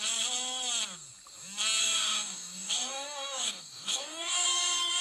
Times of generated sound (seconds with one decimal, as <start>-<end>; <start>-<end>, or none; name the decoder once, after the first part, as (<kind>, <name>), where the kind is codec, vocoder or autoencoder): 1.8-5.0 (codec, DAC)